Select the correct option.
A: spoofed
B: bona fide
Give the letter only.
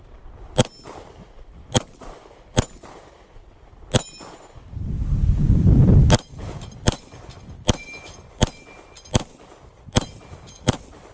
B